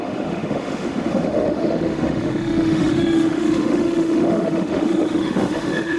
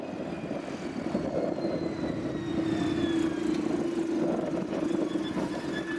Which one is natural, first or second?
second